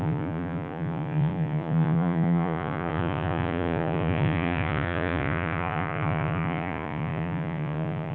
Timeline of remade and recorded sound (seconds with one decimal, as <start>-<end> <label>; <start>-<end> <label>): 0.0-8.1 remade

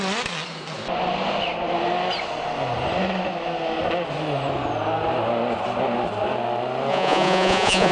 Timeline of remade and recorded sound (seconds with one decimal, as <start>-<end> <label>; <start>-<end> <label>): 0.0-6.9 recorded; 6.9-7.9 remade

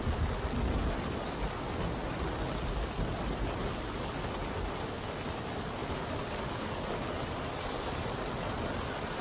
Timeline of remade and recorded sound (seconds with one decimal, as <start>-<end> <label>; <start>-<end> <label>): 0.0-9.2 recorded

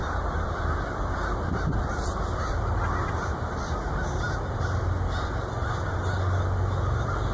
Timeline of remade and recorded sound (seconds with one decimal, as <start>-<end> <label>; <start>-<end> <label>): 0.0-7.3 recorded

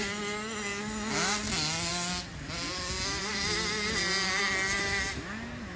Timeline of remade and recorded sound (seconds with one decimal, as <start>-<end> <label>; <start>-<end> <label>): 0.0-5.8 recorded

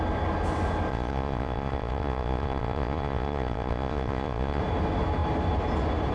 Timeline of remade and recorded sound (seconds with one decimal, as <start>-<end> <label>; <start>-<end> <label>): 0.0-0.9 recorded; 0.9-4.6 remade; 4.6-6.1 recorded